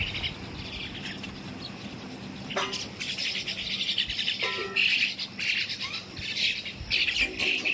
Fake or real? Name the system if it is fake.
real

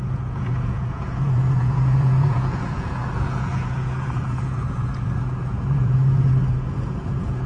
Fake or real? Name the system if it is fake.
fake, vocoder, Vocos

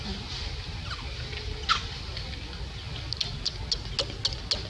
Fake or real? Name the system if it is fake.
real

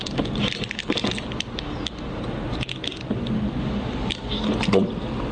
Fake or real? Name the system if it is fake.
real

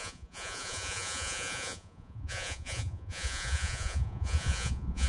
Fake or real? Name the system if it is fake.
fake, vocoder, Vocos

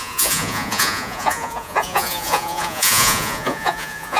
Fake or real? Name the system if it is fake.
fake, vocoder, Vocos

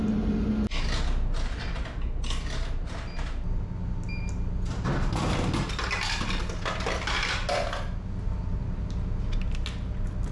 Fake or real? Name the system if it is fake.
real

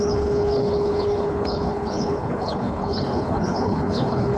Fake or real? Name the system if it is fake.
fake, codec, HILCodec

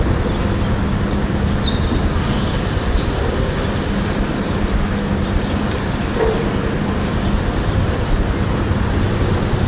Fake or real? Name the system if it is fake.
real